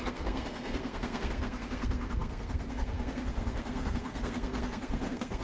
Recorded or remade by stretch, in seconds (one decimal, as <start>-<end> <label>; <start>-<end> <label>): 0.0-5.4 remade

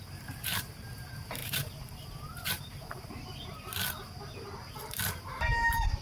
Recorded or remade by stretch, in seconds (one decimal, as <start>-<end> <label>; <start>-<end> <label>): 0.0-3.7 remade; 3.7-4.8 recorded; 4.8-6.0 remade

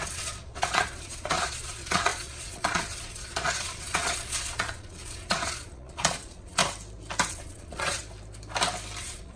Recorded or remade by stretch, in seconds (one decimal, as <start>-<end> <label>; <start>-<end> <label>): 0.0-6.6 remade; 6.6-7.3 recorded; 7.3-8.0 remade; 8.0-9.0 recorded; 9.0-9.4 remade

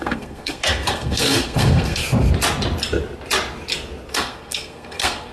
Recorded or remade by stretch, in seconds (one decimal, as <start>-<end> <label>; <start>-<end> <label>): 0.0-2.0 remade; 2.0-4.1 recorded; 4.1-5.3 remade